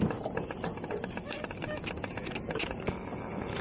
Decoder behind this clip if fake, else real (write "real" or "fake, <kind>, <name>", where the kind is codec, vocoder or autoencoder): real